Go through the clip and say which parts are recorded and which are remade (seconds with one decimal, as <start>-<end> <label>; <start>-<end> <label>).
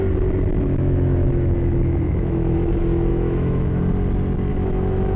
0.0-0.5 recorded; 0.5-2.7 remade; 2.7-3.1 recorded; 3.1-3.8 remade; 3.8-4.5 recorded; 4.5-5.2 remade